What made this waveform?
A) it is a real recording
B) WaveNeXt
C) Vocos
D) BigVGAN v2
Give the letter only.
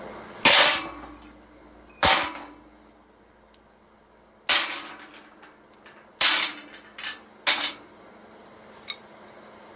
A